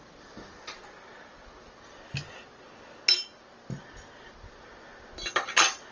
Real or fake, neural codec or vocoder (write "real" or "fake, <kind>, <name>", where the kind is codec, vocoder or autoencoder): real